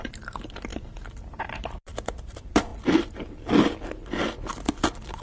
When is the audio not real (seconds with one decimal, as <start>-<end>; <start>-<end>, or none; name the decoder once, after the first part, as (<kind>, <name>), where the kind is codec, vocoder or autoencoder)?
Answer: 0.0-2.7 (vocoder, BigVGAN v2)